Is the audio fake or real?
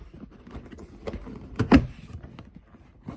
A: fake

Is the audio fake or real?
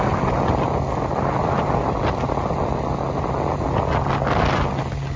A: real